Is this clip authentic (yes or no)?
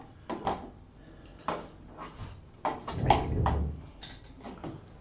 yes